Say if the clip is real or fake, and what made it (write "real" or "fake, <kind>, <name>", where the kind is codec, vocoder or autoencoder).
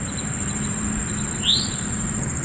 real